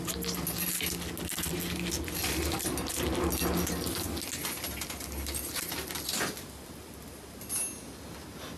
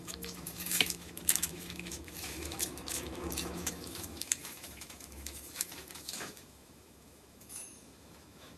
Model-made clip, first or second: second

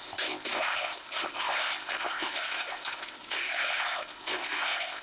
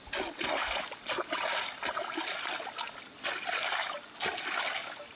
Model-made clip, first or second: first